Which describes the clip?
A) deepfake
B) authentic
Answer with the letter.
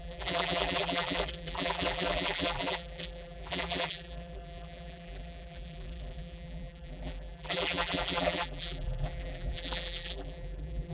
A